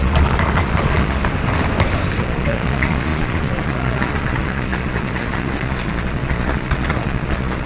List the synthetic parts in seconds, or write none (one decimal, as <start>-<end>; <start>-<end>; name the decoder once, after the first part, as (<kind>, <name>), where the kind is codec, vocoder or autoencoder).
0.0-1.2 (vocoder, Vocos); 2.2-7.7